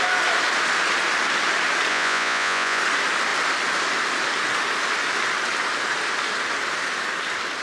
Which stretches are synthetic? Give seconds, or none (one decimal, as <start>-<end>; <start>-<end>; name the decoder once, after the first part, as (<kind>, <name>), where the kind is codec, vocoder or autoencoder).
1.9-2.8 (vocoder, Vocos)